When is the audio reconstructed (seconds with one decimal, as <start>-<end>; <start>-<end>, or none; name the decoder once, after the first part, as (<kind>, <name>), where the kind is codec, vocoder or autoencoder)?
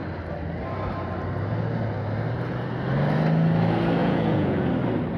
4.0-4.7 (vocoder, Vocos)